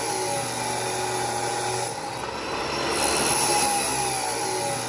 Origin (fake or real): real